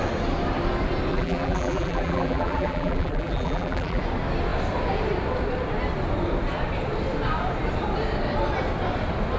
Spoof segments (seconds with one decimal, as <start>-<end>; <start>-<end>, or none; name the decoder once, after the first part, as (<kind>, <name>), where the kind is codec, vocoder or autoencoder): 1.1-4.0 (vocoder, BigVGAN v2)